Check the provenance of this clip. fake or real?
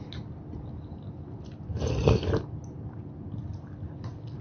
real